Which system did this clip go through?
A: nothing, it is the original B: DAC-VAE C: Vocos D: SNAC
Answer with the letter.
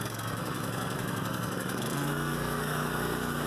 D